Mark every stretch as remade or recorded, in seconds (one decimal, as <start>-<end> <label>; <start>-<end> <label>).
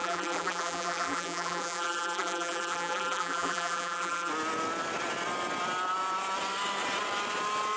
0.0-4.3 remade; 4.3-7.8 recorded